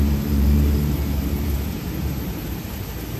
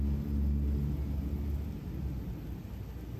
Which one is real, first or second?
second